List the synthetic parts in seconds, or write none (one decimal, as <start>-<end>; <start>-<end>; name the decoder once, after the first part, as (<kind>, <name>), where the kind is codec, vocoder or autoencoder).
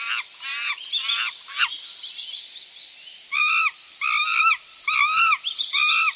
none